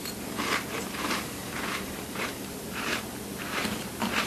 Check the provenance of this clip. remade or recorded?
remade